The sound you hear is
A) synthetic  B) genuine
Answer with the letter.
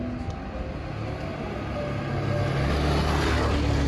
B